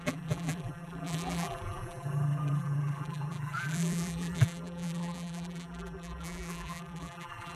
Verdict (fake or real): fake